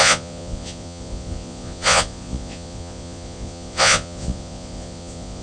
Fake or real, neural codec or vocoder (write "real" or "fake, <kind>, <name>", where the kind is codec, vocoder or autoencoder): fake, vocoder, Vocos